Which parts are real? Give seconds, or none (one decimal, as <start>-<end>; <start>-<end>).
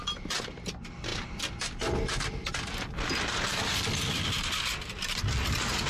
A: 0.0-5.9